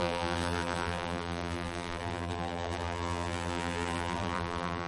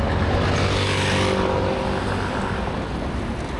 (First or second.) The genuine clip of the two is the second